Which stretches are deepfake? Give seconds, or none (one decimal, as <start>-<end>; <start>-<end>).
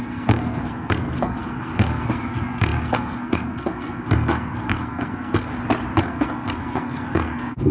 0.0-5.5; 6.0-7.7